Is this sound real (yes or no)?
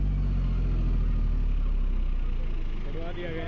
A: yes